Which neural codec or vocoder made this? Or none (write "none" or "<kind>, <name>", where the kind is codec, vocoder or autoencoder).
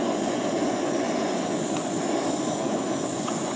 vocoder, Vocos